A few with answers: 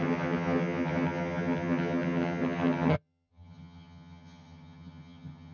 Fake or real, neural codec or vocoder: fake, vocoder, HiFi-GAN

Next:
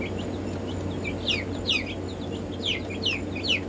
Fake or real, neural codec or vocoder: real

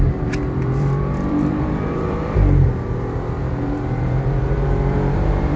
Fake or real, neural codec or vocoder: fake, vocoder, BigVGAN v2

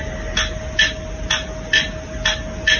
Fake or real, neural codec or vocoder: real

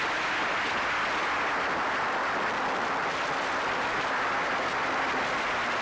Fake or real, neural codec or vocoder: real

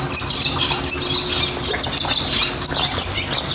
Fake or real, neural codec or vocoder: real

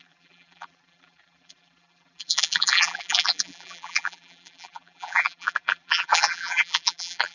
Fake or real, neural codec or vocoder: fake, vocoder, BigVGAN v2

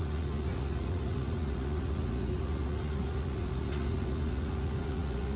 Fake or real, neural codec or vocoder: fake, vocoder, Vocos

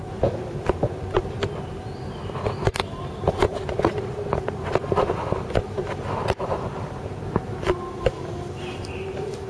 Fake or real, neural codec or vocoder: real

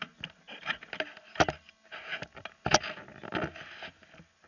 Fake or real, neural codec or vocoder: real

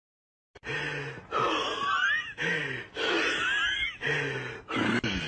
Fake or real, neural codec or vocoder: real